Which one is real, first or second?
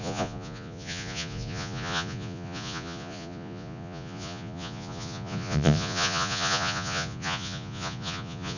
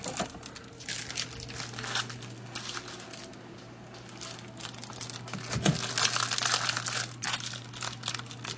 second